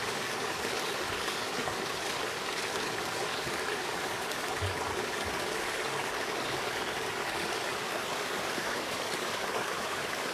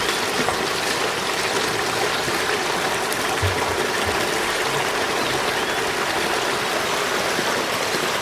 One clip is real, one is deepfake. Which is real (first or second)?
second